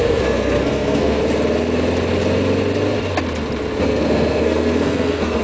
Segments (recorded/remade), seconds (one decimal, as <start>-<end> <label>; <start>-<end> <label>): 0.0-1.2 remade; 1.2-3.8 recorded; 3.8-5.4 remade